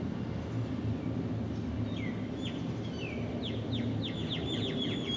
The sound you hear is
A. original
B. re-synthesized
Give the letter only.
A